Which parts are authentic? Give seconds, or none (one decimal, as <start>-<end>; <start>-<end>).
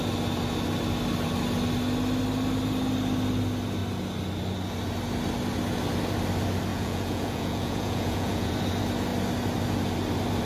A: 0.0-6.7; 8.5-10.4